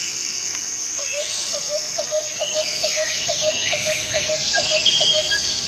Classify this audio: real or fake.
fake